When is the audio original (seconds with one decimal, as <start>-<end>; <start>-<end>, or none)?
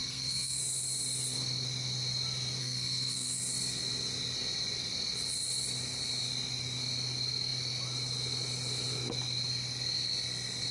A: 0.6-2.6; 3.4-10.7